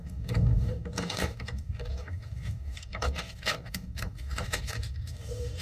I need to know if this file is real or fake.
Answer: fake